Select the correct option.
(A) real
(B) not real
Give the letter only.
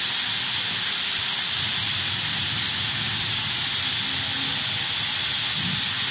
A